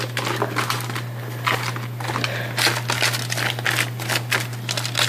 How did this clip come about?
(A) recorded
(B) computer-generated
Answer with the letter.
A